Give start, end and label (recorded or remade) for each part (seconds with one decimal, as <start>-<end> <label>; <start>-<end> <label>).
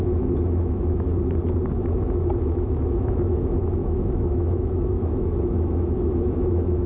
0.0-1.1 remade; 1.1-2.4 recorded; 2.4-6.9 remade